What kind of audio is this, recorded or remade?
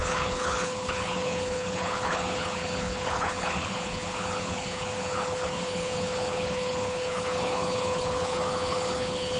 remade